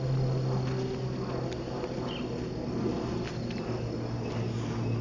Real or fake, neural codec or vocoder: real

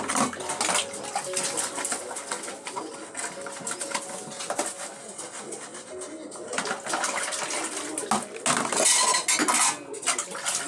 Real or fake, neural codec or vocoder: real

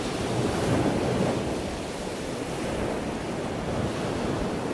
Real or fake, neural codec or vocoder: real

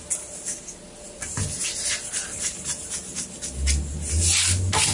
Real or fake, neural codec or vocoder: real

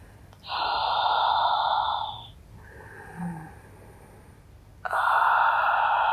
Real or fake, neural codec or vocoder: real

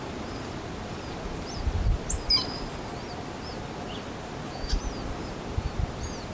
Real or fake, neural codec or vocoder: real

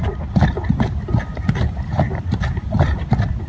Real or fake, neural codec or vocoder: real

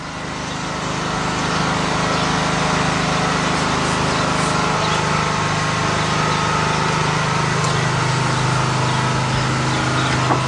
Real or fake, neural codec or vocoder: real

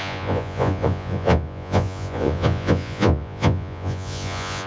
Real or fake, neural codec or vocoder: fake, vocoder, Vocos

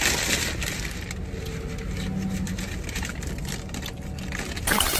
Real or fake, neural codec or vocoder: real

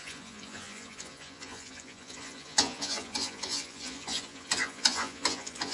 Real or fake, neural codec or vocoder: fake, vocoder, Vocos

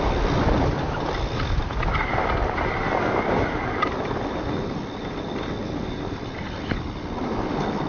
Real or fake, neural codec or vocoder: real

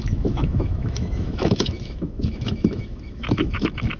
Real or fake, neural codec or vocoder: fake, autoencoder, DAC-VAE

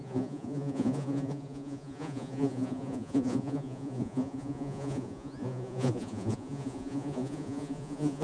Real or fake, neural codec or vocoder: fake, vocoder, Vocos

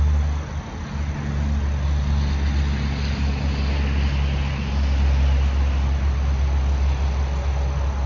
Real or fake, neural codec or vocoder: real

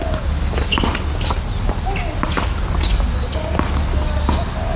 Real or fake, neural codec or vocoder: real